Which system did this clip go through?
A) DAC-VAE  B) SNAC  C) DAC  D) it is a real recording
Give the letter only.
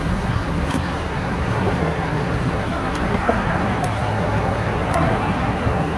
B